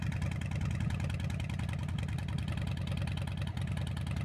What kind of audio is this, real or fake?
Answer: real